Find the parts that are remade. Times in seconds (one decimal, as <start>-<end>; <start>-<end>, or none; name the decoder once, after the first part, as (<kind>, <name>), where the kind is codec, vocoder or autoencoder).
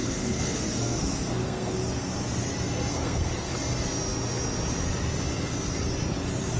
0.0-2.1 (codec, SNAC); 2.9-3.5